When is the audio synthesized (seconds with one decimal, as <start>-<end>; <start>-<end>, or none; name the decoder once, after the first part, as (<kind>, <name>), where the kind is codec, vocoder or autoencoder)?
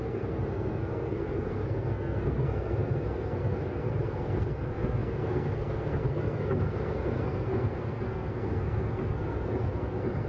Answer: 0.0-10.3 (codec, SNAC)